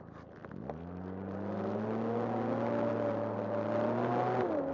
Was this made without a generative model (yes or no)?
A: yes